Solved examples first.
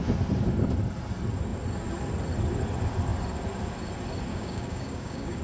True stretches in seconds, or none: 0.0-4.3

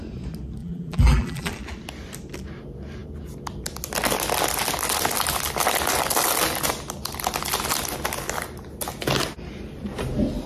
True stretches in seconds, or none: 0.0-0.6; 1.5-10.5